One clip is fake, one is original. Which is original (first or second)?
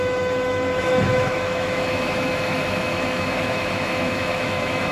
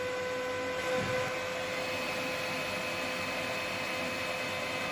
second